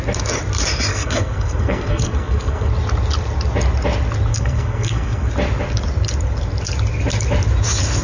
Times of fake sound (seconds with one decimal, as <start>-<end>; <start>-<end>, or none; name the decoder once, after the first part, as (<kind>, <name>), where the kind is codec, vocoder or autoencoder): 0.9-2.7 (codec, SNAC); 4.3-5.3